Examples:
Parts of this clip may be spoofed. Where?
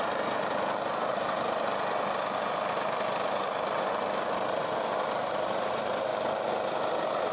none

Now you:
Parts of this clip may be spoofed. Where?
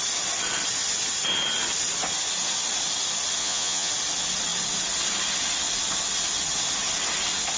3.4-3.9 (vocoder, Vocos)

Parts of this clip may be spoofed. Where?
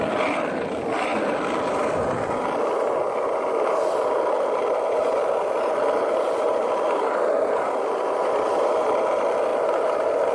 none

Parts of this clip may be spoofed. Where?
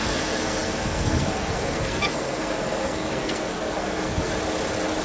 0.0-4.3 (codec, SNAC)